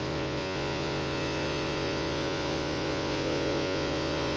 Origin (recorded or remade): remade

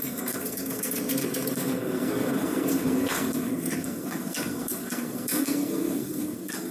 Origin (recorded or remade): remade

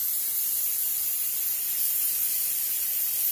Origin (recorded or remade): recorded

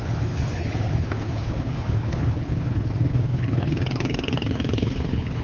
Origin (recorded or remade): remade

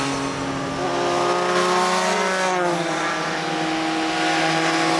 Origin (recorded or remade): recorded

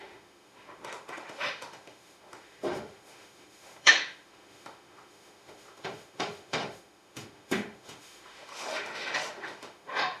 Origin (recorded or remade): remade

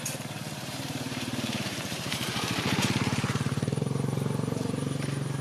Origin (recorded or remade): remade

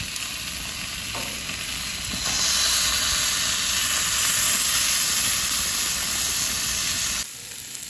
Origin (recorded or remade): recorded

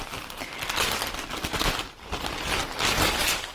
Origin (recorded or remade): recorded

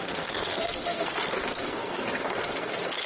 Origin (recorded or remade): remade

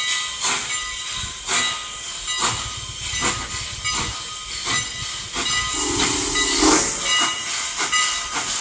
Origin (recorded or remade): recorded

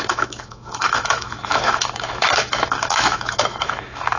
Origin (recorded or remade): remade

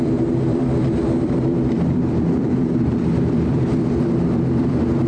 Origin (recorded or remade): remade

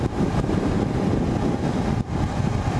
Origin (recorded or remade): recorded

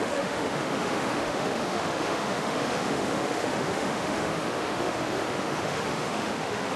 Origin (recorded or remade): remade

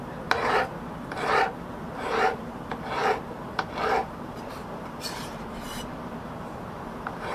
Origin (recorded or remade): remade